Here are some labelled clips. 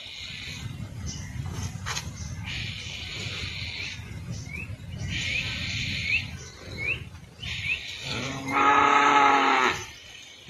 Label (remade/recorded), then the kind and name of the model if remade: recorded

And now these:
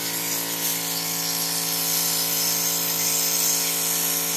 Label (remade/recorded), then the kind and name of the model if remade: recorded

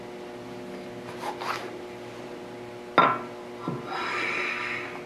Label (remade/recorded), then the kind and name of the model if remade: recorded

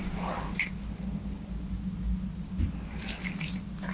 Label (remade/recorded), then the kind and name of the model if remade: recorded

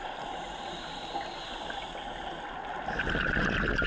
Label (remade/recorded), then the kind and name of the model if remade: recorded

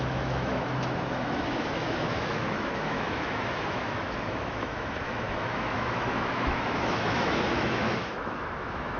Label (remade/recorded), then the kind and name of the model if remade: remade, autoencoder, DAC-VAE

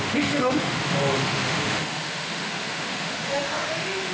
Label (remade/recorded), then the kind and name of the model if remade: remade, autoencoder, DAC-VAE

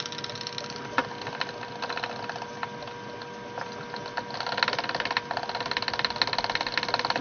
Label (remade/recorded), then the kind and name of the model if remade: recorded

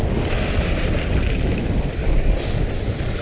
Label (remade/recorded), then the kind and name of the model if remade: recorded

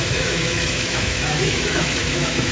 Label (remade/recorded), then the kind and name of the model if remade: remade, autoencoder, DAC-VAE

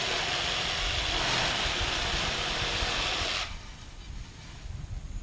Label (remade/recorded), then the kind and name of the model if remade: recorded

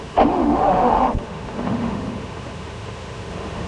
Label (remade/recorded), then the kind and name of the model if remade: remade, autoencoder, DAC-VAE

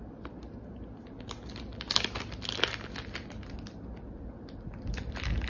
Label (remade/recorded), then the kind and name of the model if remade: recorded